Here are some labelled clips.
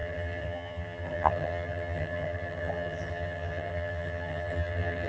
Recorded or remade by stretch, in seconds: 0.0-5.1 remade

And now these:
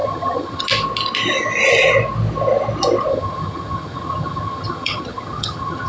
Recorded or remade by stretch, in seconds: 0.0-0.6 remade; 0.6-3.1 recorded; 3.1-5.9 remade

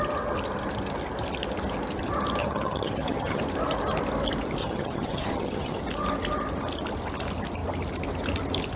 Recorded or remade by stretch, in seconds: 0.0-2.4 recorded; 2.4-3.4 remade; 3.4-4.6 recorded; 4.6-5.8 remade; 5.8-8.8 recorded

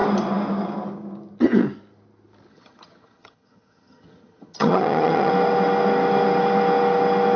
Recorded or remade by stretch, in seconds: 0.0-2.5 recorded; 2.5-5.3 remade; 5.3-7.4 recorded

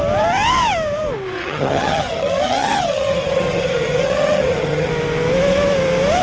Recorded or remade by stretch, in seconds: 0.0-1.4 recorded; 1.4-4.9 remade; 4.9-6.2 recorded

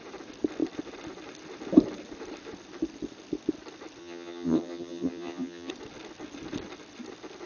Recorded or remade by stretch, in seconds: 0.0-4.0 recorded; 4.0-5.7 remade; 5.7-7.5 recorded

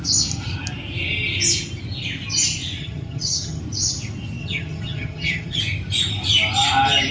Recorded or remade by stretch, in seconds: 0.0-2.8 recorded; 2.8-3.6 remade; 3.6-4.4 recorded; 4.4-5.6 remade; 5.6-7.1 recorded

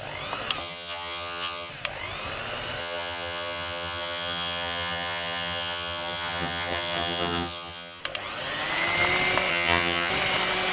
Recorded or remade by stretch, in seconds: 0.0-0.6 recorded; 0.6-1.7 remade; 1.7-2.8 recorded; 2.8-8.0 remade; 8.0-9.5 recorded; 9.5-10.1 remade; 10.1-10.7 recorded